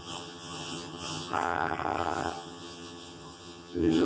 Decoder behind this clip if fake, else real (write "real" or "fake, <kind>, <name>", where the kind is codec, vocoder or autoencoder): fake, vocoder, HiFi-GAN